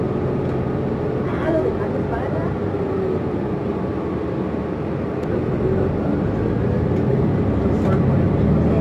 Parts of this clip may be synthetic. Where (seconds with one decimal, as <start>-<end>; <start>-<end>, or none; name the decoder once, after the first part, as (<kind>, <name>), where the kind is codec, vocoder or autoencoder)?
none